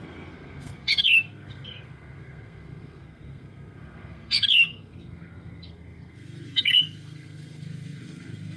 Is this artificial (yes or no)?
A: yes